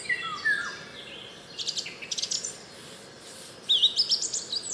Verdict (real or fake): real